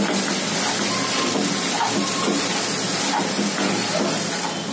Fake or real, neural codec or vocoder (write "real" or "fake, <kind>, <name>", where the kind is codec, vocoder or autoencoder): real